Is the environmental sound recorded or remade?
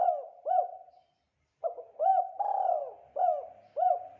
recorded